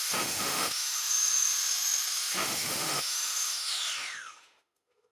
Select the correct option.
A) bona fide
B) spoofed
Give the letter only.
B